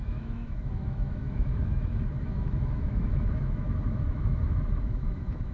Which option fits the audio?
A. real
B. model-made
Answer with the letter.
B